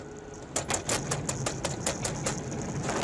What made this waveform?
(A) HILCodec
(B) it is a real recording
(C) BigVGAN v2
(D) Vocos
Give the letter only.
B